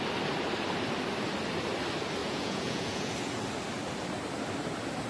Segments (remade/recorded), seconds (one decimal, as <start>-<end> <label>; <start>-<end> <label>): 0.0-2.2 recorded; 2.2-3.1 remade; 3.1-5.1 recorded